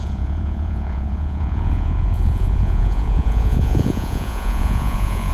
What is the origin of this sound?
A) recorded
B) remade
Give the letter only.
B